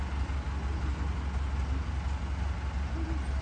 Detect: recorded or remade recorded